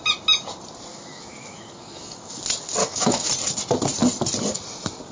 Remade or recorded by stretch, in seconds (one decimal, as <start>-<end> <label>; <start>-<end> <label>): 0.0-0.9 recorded; 0.9-2.4 remade; 2.4-2.8 recorded; 2.8-3.3 remade; 3.3-5.1 recorded